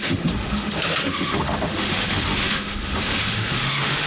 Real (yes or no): no